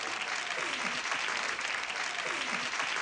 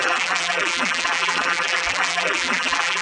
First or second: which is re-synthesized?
second